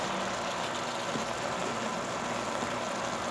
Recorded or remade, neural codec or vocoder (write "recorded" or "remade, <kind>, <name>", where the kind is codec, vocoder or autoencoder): recorded